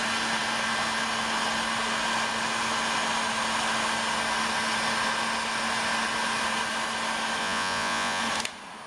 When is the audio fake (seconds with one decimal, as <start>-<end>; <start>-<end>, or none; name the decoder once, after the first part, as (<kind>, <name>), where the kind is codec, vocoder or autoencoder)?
7.4-8.2 (vocoder, Vocos)